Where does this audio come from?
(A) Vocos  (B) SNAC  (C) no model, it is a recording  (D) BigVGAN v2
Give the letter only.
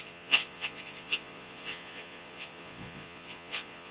A